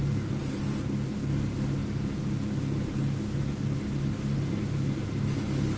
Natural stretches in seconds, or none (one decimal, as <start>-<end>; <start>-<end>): 0.0-0.4; 1.1-5.8